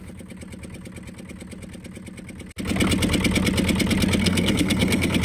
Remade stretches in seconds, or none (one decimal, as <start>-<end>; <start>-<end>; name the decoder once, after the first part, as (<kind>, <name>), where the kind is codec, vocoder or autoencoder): 4.2-5.2 (codec, SNAC)